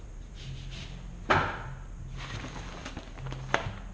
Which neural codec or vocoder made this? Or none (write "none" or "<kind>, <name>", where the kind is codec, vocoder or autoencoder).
none